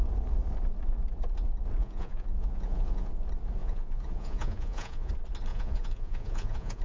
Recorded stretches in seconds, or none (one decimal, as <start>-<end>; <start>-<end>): 0.0-1.8; 3.1-3.6; 5.1-5.5